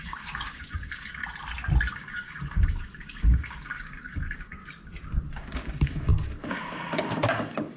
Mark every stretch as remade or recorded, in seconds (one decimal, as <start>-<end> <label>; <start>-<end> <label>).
0.0-1.2 remade; 1.2-1.9 recorded; 1.9-4.6 remade; 4.6-5.2 recorded; 5.2-7.8 remade